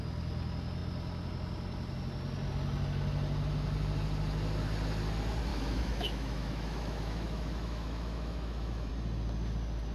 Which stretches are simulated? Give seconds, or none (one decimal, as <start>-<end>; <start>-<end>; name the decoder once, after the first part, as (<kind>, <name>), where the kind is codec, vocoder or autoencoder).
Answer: 5.5-8.9 (autoencoder, DAC-VAE)